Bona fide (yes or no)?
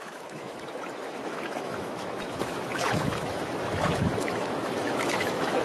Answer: no